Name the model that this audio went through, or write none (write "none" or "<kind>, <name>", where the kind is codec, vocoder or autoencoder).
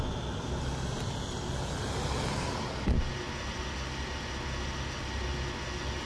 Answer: none